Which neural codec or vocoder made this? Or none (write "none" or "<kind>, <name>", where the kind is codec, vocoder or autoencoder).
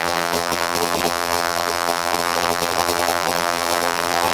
vocoder, BigVGAN v2